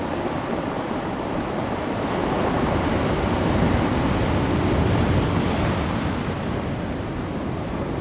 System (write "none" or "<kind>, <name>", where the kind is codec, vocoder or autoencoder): none